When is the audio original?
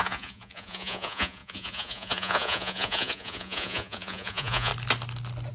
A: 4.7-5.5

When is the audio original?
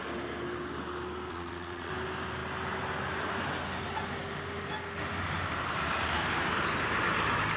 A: 0.0-1.3; 1.9-7.6